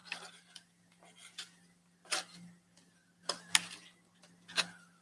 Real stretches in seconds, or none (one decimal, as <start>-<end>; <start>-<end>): 0.0-5.0